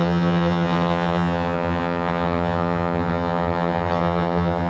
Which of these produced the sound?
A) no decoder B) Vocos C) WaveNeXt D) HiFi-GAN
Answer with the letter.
D